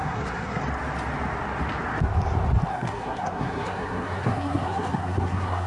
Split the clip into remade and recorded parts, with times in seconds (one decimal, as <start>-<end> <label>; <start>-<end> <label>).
0.0-0.6 remade; 0.6-2.7 recorded; 2.7-5.7 remade

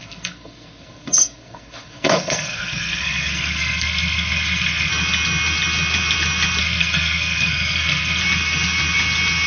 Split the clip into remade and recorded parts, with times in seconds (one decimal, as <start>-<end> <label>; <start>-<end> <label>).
0.0-4.9 remade; 4.9-6.6 recorded; 6.6-8.2 remade; 8.2-9.5 recorded

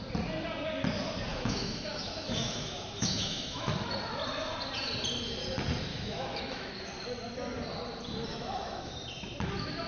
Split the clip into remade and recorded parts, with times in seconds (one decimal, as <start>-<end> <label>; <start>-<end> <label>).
0.0-1.3 recorded; 1.3-3.7 remade; 3.7-5.9 recorded; 5.9-6.7 remade; 6.7-8.3 recorded; 8.3-8.9 remade; 8.9-9.9 recorded

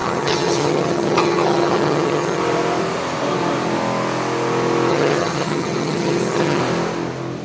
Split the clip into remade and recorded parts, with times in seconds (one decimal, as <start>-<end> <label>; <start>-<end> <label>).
0.0-2.4 remade; 2.4-4.9 recorded; 4.9-6.6 remade; 6.6-7.4 recorded

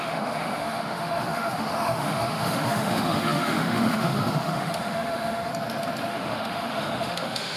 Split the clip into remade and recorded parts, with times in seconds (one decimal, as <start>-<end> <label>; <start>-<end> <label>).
0.0-5.5 remade; 5.5-6.1 recorded; 6.1-7.6 remade

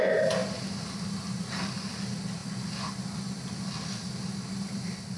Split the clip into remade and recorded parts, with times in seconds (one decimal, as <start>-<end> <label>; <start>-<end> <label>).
0.0-5.2 recorded